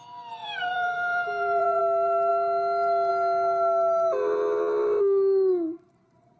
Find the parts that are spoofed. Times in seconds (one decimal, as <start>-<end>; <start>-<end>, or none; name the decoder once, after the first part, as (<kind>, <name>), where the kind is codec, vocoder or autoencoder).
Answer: 0.4-1.8 (vocoder, BigVGAN v2)